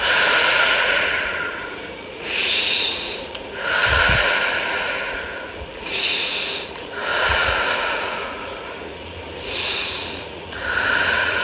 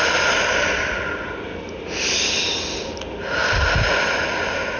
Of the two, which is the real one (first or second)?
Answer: second